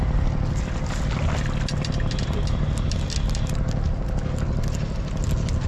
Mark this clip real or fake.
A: real